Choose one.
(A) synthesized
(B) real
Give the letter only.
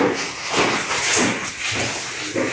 B